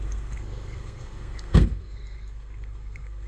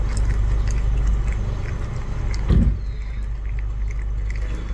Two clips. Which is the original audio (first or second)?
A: second